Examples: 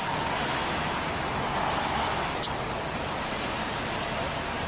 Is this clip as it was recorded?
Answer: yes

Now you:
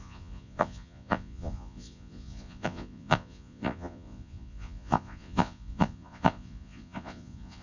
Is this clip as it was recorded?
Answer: no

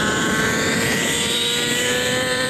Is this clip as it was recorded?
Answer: no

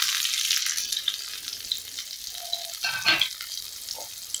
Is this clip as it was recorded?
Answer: yes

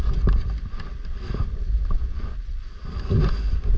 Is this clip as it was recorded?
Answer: yes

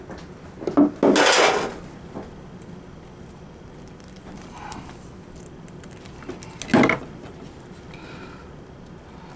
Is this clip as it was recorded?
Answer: yes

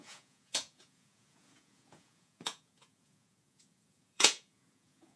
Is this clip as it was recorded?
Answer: no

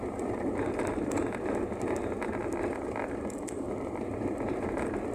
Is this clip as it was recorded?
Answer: yes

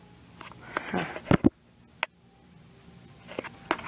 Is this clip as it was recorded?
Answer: yes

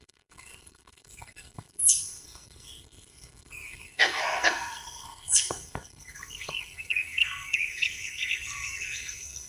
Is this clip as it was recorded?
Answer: no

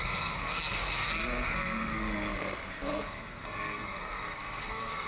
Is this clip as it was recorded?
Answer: no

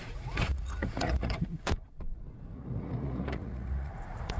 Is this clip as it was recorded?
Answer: no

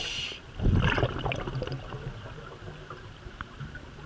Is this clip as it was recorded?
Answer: yes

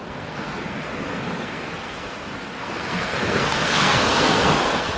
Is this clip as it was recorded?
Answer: no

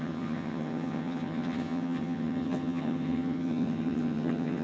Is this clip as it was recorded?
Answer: no